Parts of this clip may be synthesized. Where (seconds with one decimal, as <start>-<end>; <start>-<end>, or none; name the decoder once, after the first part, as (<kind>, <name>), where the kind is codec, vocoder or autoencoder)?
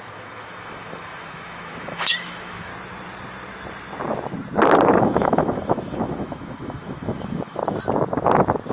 0.0-2.7 (autoencoder, DAC-VAE); 5.0-7.6